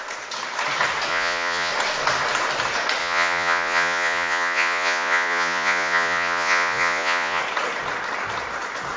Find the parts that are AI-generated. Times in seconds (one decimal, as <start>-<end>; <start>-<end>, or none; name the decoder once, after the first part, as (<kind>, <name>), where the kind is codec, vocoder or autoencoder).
1.1-1.7 (vocoder, Vocos); 3.0-7.4